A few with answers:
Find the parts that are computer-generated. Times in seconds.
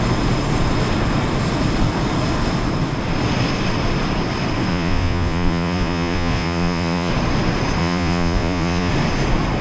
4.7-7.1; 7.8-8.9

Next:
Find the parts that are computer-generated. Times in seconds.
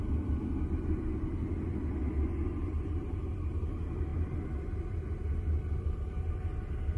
none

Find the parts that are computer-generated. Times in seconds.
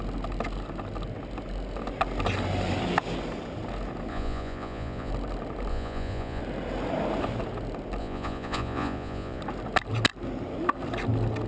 4.1-5.1; 5.7-6.4; 8.0-9.4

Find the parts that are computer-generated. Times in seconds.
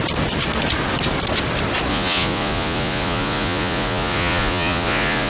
1.9-5.3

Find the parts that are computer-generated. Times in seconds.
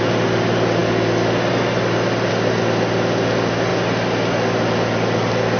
none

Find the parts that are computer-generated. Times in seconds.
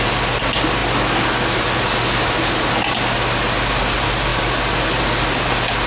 none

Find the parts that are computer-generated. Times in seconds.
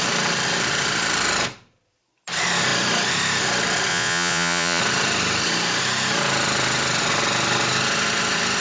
3.9-4.8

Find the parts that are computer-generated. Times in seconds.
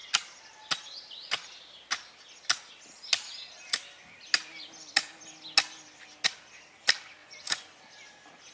7.2-7.8